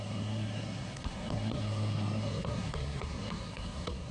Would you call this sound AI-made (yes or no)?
yes